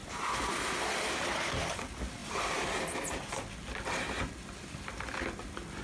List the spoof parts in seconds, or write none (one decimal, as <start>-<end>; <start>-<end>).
none